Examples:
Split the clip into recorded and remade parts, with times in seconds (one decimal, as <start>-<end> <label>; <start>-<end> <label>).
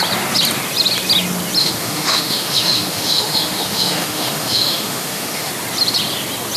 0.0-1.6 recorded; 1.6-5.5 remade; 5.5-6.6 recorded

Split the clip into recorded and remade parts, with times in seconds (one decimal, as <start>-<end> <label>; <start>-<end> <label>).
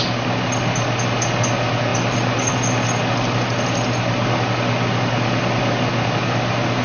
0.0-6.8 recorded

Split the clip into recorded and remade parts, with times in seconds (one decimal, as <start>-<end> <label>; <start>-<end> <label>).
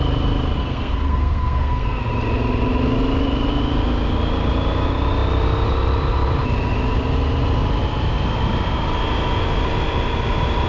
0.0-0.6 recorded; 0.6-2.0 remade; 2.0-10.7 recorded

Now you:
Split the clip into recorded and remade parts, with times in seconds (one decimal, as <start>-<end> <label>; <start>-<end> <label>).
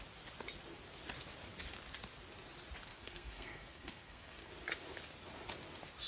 0.0-2.9 recorded; 2.9-4.5 remade; 4.5-6.1 recorded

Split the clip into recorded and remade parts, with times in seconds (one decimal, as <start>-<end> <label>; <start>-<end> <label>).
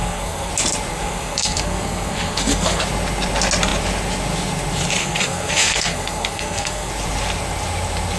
0.0-0.5 remade; 0.5-0.9 recorded; 0.9-2.8 remade; 2.8-5.0 recorded; 5.0-6.9 remade; 6.9-8.2 recorded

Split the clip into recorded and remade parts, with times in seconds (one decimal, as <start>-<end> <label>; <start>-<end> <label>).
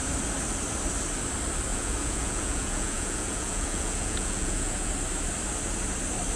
0.0-1.7 recorded; 1.7-4.9 remade; 4.9-6.4 recorded